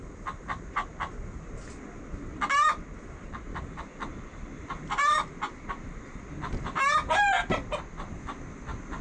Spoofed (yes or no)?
no